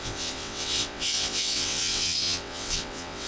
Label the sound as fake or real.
fake